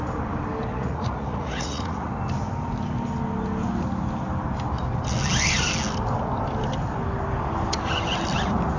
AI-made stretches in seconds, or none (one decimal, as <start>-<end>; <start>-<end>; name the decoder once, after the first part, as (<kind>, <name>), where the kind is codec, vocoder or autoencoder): 0.7-2.1 (vocoder, Vocos)